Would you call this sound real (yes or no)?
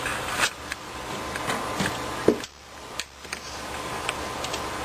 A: yes